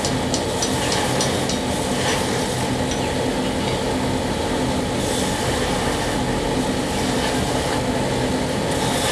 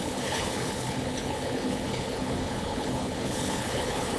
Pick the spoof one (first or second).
second